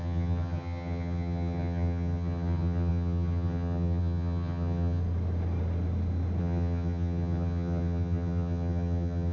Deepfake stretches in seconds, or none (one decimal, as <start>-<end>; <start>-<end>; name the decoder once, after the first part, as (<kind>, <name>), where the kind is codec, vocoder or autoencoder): 0.0-5.0 (vocoder, HiFi-GAN); 6.4-9.3

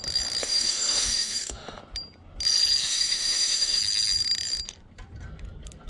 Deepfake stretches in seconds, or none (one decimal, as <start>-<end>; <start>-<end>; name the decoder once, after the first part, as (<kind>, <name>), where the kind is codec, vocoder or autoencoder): 0.4-1.8 (autoencoder, DAC-VAE); 2.8-3.8